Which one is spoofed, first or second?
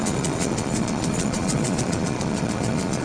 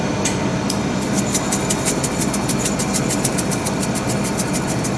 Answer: first